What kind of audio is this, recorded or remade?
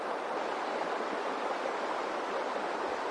recorded